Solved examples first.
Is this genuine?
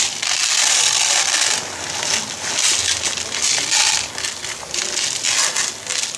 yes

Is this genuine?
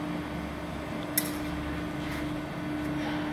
yes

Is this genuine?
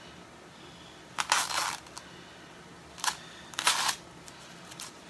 yes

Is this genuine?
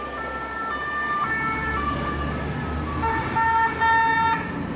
yes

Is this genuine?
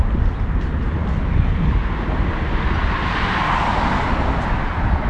yes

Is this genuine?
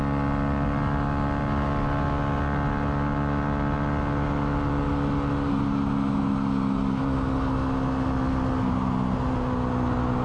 yes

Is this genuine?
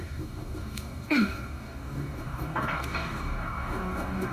no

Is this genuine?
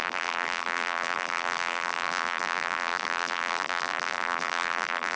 no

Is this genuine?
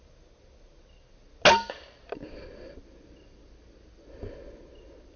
yes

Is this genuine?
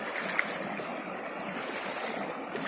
yes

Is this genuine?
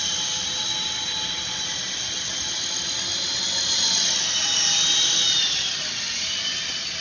yes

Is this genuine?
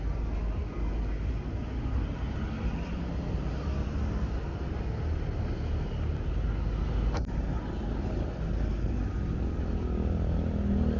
yes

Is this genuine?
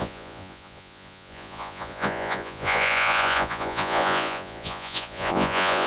no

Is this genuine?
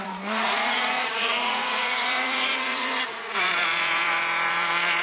no